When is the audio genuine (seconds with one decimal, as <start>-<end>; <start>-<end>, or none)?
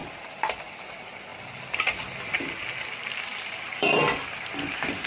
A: 0.0-0.9; 1.3-3.7